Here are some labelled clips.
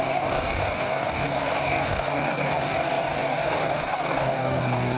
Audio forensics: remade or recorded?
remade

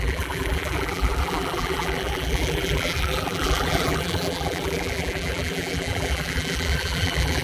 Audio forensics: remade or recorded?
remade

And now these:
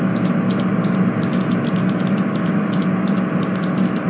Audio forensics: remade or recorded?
recorded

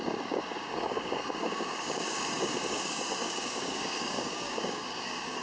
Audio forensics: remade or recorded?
remade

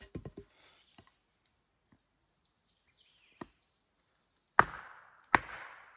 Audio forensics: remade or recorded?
recorded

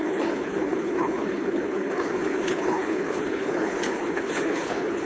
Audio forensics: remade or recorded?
remade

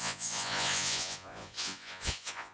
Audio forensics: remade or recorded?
remade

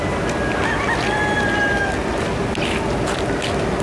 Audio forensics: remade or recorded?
recorded